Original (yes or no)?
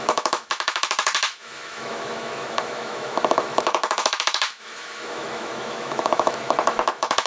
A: no